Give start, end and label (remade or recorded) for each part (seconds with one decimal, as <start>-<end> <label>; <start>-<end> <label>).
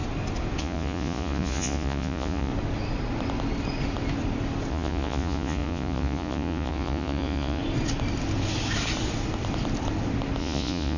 0.0-0.6 recorded; 0.6-2.5 remade; 2.5-4.7 recorded; 4.7-7.6 remade; 7.6-10.4 recorded; 10.4-11.0 remade